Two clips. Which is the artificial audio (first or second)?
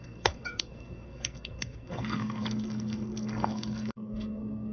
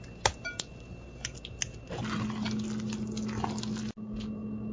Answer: first